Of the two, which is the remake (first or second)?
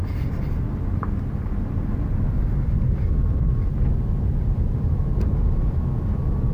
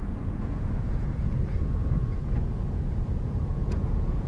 second